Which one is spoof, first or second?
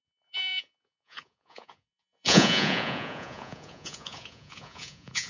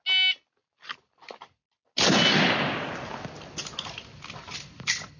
first